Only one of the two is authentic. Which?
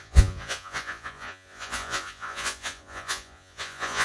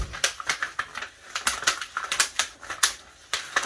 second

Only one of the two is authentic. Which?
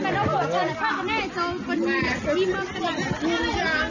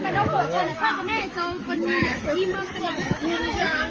first